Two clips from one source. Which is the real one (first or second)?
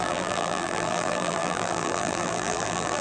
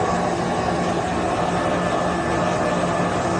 second